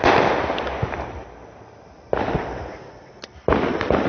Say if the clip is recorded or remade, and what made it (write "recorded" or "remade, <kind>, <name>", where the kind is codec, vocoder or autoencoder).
recorded